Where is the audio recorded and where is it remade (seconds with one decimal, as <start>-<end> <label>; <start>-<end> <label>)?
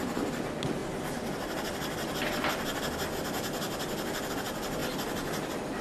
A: 0.0-5.8 recorded